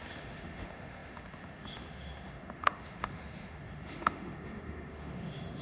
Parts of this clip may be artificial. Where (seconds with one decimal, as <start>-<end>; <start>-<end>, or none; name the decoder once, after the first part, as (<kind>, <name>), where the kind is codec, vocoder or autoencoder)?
0.0-5.6 (autoencoder, DAC-VAE)